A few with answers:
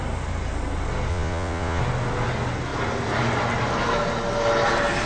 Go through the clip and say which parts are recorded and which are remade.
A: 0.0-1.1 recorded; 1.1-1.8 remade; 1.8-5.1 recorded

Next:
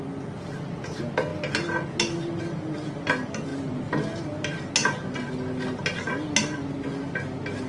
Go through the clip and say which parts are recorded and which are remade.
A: 0.0-7.7 recorded

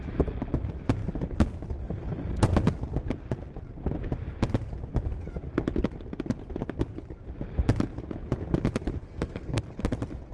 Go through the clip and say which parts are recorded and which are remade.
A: 0.0-9.0 recorded; 9.0-9.6 remade; 9.6-10.3 recorded

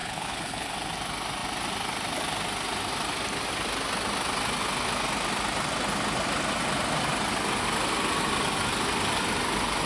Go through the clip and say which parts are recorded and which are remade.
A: 0.0-0.7 remade; 0.7-9.9 recorded

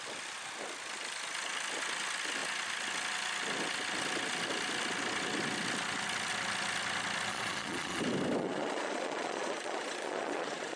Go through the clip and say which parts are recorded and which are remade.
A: 0.0-7.3 recorded; 7.3-8.0 remade; 8.0-8.4 recorded; 8.4-10.8 remade

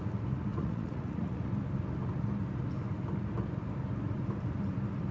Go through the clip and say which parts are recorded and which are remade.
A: 0.0-0.5 recorded; 0.5-1.5 remade; 1.5-5.1 recorded